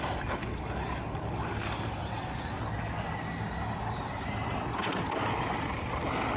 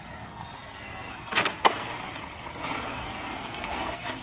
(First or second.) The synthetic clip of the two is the second